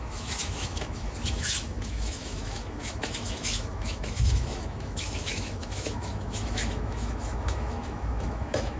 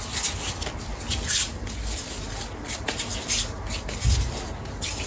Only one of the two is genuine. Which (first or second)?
second